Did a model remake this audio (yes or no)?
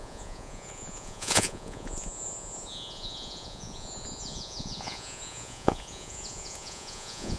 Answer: yes